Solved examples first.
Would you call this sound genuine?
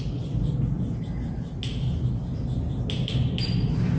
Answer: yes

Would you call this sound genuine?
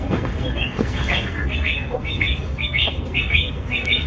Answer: no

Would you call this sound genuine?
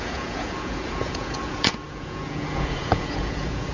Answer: no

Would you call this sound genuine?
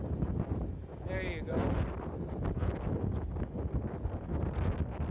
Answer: yes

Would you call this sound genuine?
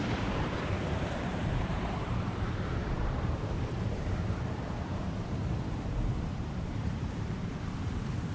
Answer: no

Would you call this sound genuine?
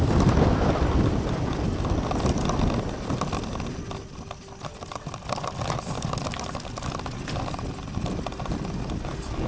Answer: yes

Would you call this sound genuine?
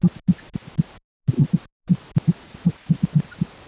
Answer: yes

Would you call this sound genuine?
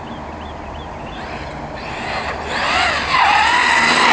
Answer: yes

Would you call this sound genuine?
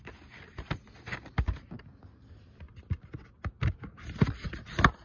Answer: yes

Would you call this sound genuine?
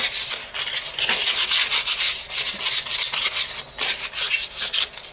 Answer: yes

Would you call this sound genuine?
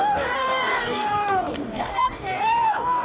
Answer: no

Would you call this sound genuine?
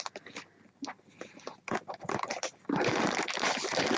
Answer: yes